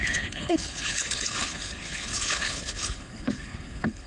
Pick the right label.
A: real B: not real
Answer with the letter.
B